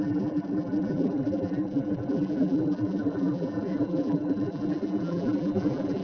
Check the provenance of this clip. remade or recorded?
remade